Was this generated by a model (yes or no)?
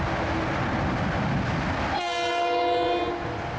no